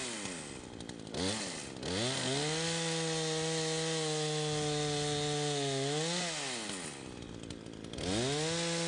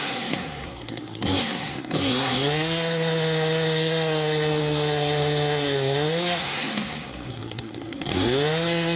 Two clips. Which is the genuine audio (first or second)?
first